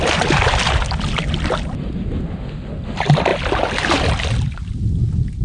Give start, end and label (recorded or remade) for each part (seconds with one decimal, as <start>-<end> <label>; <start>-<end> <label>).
0.0-5.4 recorded